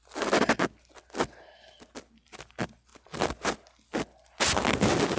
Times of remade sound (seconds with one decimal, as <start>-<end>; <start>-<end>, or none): none